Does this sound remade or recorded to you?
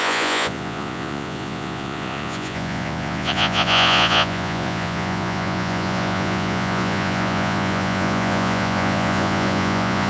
remade